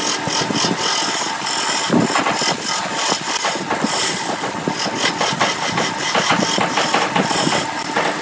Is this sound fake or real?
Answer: real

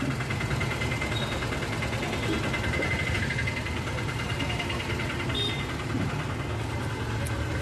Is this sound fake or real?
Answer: real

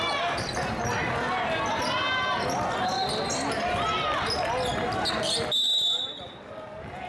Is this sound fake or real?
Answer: real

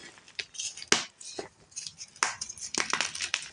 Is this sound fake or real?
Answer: real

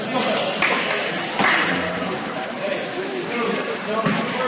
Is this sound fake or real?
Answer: real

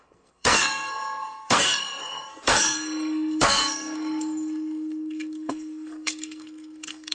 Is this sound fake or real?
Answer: fake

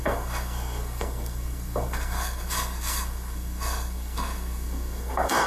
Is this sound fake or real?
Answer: fake